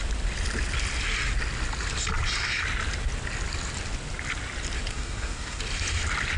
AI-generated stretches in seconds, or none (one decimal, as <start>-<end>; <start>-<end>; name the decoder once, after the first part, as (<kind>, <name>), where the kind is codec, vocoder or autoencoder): 4.9-5.6 (codec, SNAC)